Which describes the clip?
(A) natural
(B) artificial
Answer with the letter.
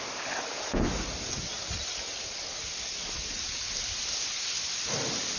A